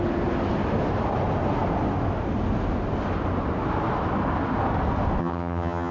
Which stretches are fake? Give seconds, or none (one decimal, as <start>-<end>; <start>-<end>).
5.2-5.9